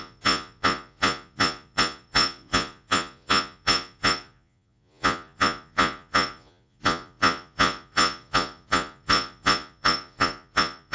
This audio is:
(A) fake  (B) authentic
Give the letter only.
A